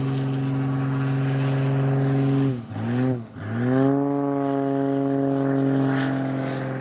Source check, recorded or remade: recorded